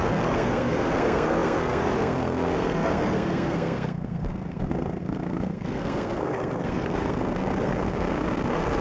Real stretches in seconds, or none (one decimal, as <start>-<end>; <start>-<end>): none